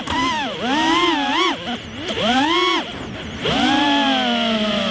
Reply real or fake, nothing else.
real